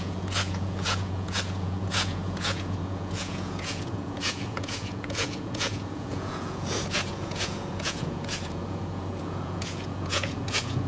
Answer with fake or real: fake